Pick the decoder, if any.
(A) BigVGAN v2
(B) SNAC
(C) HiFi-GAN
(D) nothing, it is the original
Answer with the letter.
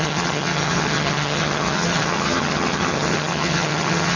C